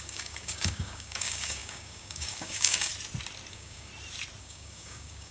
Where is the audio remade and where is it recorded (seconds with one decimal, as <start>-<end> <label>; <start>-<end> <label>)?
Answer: 0.0-2.9 remade; 2.9-3.5 recorded; 3.5-3.9 remade; 3.9-4.4 recorded; 4.4-5.3 remade